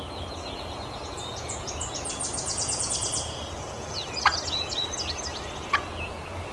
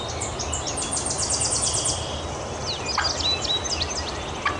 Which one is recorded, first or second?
second